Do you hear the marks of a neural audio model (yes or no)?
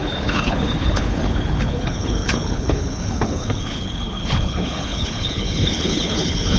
yes